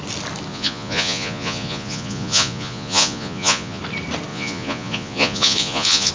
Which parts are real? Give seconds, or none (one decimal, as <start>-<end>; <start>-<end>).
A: 0.0-0.5; 3.8-4.3